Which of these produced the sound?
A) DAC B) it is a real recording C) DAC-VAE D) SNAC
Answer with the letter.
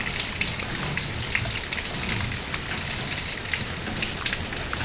B